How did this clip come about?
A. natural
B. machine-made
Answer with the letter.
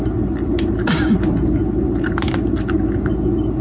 A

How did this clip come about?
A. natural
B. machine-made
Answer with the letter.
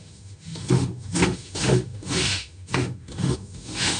B